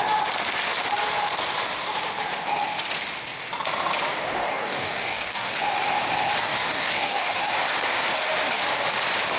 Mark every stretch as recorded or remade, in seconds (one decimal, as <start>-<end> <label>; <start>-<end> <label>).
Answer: 0.0-4.4 recorded; 4.4-5.5 remade; 5.5-6.4 recorded; 6.4-7.5 remade; 7.5-9.4 recorded